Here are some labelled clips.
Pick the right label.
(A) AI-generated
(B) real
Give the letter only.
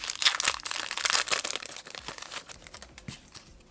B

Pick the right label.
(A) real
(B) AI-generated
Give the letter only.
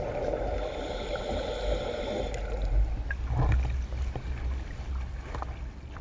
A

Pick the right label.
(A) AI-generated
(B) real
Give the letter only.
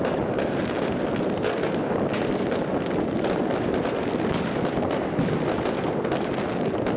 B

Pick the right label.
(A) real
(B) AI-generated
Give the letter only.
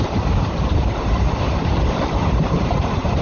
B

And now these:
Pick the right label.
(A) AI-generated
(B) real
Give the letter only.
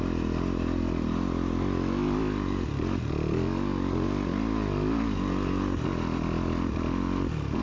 B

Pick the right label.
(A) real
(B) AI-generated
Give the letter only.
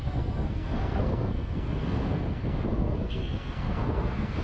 B